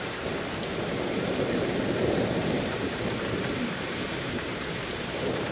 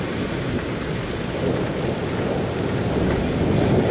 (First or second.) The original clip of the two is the second